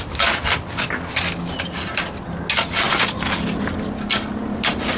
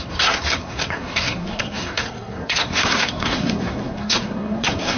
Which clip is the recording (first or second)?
first